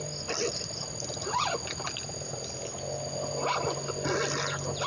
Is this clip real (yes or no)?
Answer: yes